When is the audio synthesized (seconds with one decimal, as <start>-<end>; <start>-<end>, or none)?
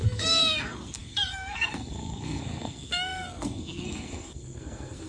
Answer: 0.0-5.1